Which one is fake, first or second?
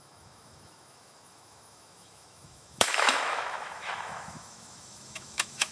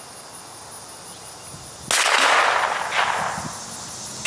first